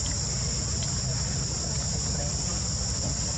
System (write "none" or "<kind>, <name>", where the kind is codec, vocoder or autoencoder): none